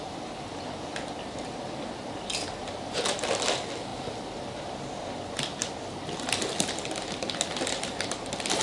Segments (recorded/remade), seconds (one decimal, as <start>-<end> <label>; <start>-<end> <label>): 0.0-2.6 recorded; 2.6-3.2 remade; 3.2-5.6 recorded; 5.6-7.0 remade; 7.0-8.6 recorded